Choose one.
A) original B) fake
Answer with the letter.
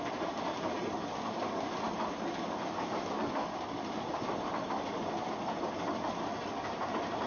A